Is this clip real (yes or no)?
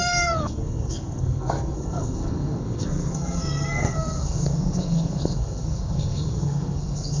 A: no